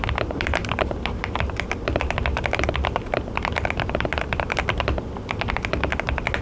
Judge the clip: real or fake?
real